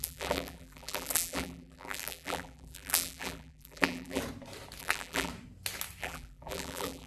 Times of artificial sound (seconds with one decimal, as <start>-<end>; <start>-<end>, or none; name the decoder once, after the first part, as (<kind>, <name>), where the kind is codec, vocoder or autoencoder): 0.0-4.2 (vocoder, BigVGAN v2); 4.8-5.3; 6.0-7.1